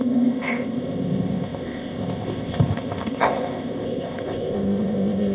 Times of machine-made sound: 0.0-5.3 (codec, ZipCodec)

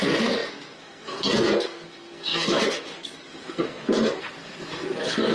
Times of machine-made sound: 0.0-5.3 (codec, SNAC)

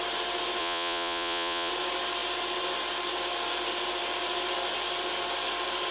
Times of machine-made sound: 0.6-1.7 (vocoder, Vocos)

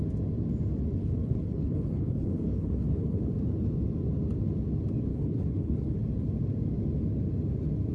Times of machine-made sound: 1.0-3.3 (codec, HILCodec); 5.1-6.0